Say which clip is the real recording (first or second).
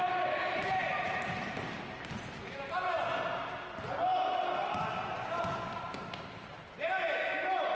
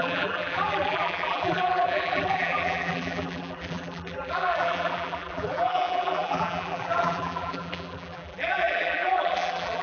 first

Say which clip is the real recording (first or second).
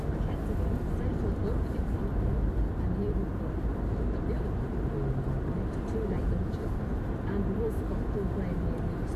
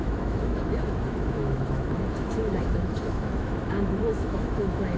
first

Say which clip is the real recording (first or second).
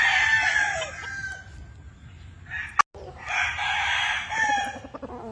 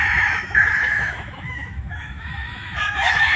first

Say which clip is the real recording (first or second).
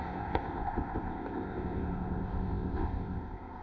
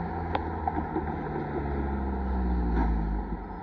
second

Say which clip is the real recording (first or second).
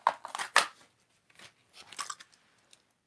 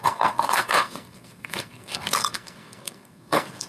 first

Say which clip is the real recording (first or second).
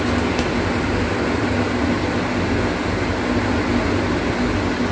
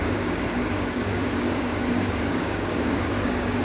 first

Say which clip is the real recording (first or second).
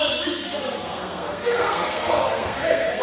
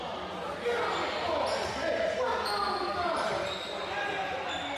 second